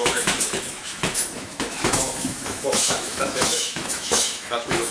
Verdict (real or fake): fake